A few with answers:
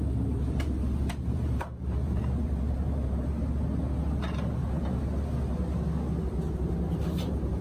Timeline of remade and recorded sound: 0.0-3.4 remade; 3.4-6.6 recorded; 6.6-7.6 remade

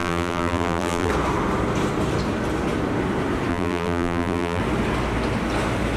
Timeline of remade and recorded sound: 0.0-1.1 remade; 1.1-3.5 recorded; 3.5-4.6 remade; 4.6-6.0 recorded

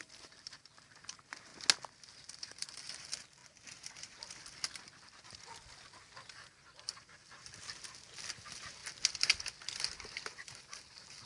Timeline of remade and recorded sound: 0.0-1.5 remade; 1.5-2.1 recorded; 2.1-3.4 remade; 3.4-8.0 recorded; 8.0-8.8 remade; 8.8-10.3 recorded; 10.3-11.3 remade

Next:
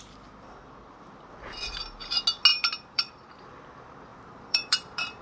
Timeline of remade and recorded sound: 0.0-2.5 recorded; 2.5-3.4 remade; 3.4-4.1 recorded; 4.1-5.2 remade

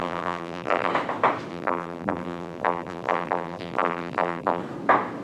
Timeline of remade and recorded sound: 0.0-0.9 remade; 0.9-1.5 recorded; 1.5-4.6 remade; 4.6-5.2 recorded